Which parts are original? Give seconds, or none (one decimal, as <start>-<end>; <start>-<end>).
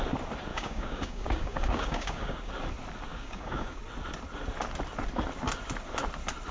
0.0-0.5; 2.5-3.1; 3.8-6.5